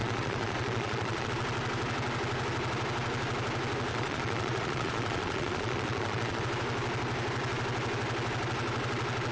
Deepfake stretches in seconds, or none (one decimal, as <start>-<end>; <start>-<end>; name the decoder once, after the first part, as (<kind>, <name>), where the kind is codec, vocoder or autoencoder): 0.0-1.3 (vocoder, Vocos); 3.9-6.4

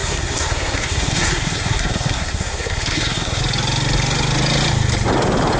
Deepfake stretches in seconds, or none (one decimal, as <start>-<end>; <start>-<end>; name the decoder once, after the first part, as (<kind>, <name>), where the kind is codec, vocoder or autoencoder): 0.0-3.4 (codec, SNAC)

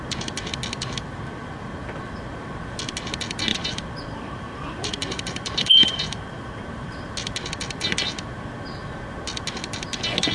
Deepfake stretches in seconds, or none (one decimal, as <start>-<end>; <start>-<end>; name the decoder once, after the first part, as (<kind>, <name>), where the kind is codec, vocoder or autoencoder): 3.5-7.1 (vocoder, BigVGAN v2)

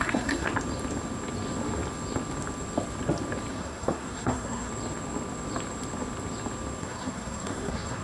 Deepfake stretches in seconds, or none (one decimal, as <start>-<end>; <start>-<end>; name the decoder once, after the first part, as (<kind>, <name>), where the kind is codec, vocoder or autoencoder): 0.0-0.5 (codec, SNAC); 3.5-4.7; 6.8-8.0